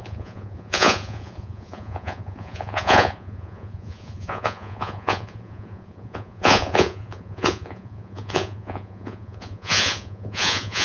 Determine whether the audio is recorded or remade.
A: remade